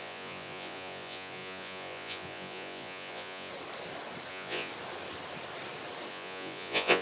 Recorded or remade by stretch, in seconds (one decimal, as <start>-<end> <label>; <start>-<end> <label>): 0.0-3.5 remade; 3.5-4.3 recorded; 4.3-4.7 remade; 4.7-6.1 recorded; 6.1-7.0 remade